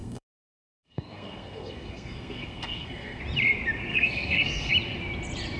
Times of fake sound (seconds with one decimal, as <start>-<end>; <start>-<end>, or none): 0.0-3.2; 3.9-4.7